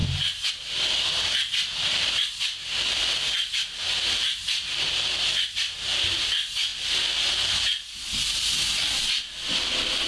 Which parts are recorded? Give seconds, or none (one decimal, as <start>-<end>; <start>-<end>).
0.0-10.1